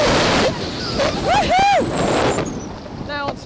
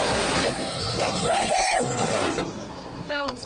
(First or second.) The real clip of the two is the first